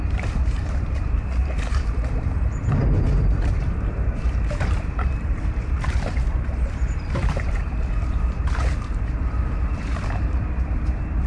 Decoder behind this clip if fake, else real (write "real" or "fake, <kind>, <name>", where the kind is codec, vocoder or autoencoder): fake, vocoder, BigVGAN v2